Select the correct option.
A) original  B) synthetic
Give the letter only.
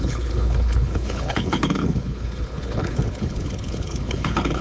B